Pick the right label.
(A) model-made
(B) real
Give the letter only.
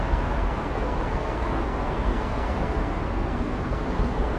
A